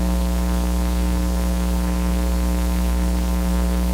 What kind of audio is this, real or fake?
fake